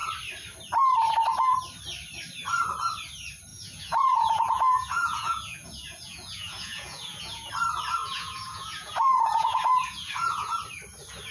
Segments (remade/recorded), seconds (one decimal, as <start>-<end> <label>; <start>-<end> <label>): 0.0-3.5 recorded; 3.5-7.5 remade; 7.5-8.0 recorded; 8.0-10.6 remade; 10.6-11.3 recorded